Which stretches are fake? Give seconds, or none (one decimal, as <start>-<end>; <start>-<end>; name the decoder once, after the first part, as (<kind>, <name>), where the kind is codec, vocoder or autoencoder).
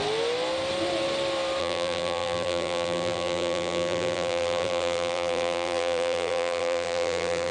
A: 1.6-7.5 (vocoder, BigVGAN v2)